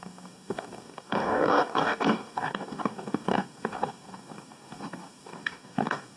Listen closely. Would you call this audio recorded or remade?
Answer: remade